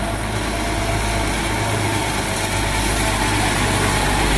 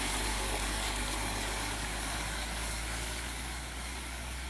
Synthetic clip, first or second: second